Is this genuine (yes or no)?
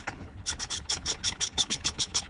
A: no